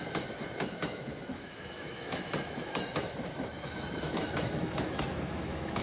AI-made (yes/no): yes